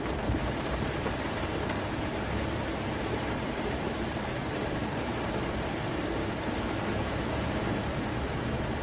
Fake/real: fake